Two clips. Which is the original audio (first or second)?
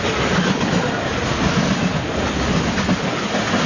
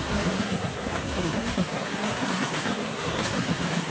first